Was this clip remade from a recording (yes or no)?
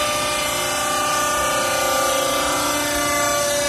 no